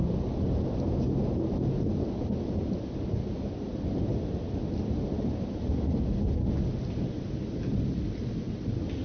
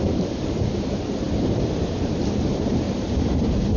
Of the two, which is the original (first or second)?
first